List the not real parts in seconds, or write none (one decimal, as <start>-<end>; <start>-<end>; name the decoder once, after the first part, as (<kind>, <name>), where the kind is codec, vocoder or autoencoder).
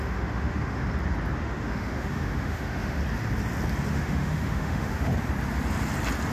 0.0-0.8 (autoencoder, DAC-VAE); 1.4-3.0; 3.9-5.1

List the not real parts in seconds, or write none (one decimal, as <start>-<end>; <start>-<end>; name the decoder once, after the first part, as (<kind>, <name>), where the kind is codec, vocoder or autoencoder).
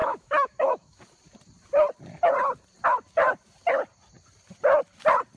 0.0-1.0 (autoencoder, DAC-VAE)